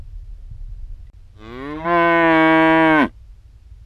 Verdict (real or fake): real